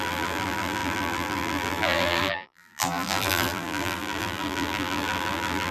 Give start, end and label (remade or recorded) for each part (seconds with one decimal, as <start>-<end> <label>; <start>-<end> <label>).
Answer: 0.0-5.7 remade